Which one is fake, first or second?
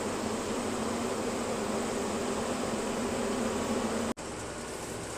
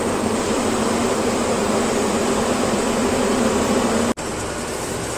second